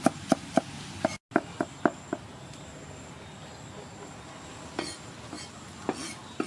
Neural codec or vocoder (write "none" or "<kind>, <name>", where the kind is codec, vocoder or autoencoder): none